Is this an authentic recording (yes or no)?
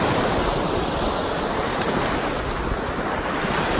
yes